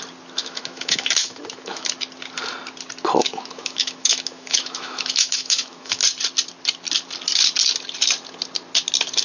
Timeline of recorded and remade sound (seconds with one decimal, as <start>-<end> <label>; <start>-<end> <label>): 0.0-0.4 recorded; 0.4-1.9 remade; 1.9-3.2 recorded; 3.2-6.0 remade; 6.0-9.2 recorded